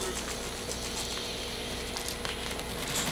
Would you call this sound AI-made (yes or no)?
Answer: no